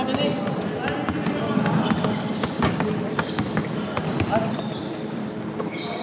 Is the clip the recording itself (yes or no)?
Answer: yes